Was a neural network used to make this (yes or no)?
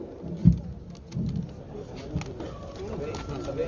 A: no